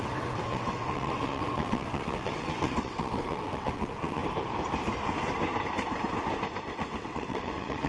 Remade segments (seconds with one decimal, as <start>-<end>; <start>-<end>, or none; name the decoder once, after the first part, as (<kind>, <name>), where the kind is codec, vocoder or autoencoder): 0.0-4.2 (vocoder, WaveNeXt); 6.7-7.9